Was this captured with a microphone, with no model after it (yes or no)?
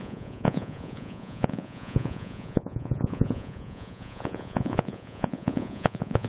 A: no